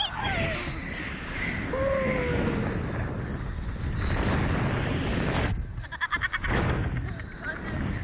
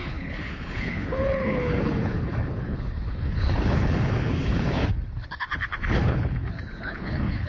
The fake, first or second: second